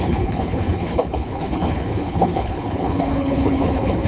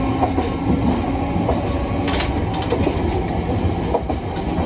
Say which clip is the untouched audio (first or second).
second